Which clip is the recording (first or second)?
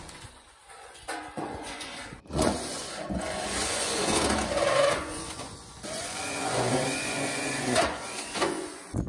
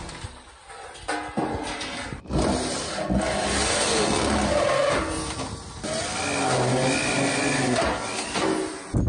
second